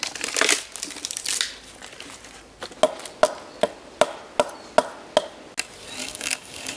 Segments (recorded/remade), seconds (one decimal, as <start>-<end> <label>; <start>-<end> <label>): 0.0-6.0 recorded; 6.0-6.8 remade